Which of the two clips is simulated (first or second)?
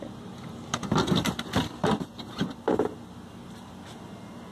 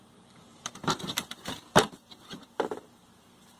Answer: second